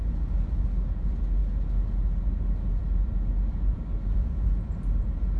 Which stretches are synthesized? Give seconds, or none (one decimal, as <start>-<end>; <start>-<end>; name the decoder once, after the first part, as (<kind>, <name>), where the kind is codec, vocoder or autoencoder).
0.0-1.4 (vocoder, BigVGAN v2); 2.7-5.4